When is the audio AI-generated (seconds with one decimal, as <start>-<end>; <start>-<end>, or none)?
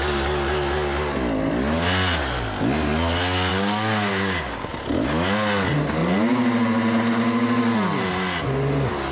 3.5-4.7